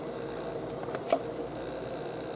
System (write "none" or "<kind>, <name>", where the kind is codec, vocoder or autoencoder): none